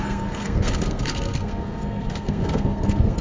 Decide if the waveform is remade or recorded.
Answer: remade